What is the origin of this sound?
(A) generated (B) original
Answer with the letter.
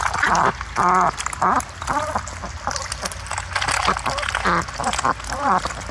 B